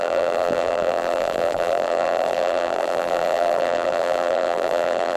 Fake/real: fake